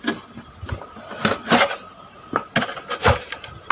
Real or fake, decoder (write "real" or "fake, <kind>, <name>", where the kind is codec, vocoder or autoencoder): real